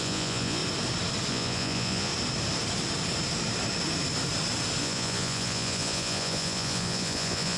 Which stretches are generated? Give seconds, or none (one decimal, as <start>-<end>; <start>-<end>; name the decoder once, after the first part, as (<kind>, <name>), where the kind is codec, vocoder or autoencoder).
0.0-0.6 (vocoder, Vocos); 1.3-2.1; 4.8-7.6